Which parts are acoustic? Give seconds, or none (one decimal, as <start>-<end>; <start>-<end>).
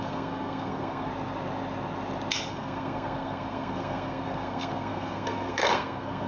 1.1-2.5